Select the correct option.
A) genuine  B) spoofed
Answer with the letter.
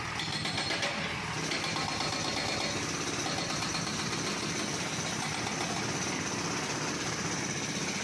A